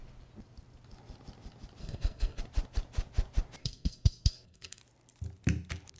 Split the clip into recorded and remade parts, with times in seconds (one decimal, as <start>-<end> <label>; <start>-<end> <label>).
0.0-1.8 recorded; 1.8-2.4 remade; 2.4-3.6 recorded; 3.6-4.8 remade; 4.8-6.0 recorded